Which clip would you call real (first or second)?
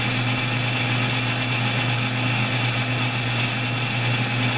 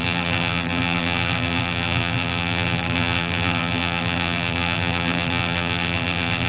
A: first